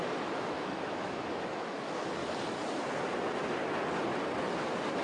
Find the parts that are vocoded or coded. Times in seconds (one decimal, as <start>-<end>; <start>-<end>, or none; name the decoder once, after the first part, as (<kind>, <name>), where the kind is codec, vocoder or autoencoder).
0.0-2.2 (autoencoder, DAC-VAE)